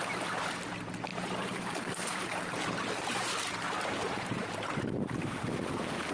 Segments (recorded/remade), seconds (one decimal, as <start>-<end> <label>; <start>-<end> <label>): 0.0-1.1 recorded; 1.1-4.8 remade; 4.8-6.1 recorded